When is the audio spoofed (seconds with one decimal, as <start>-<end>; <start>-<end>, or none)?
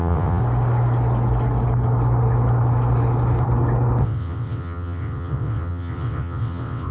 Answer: 0.0-0.4; 4.0-6.9